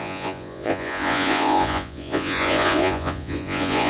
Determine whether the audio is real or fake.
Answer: fake